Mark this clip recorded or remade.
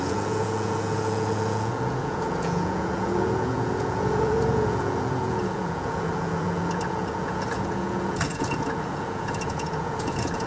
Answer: remade